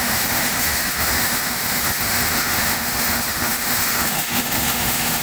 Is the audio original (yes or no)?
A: no